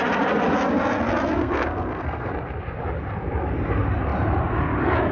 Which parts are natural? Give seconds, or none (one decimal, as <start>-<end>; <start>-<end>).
0.0-1.4; 2.3-5.1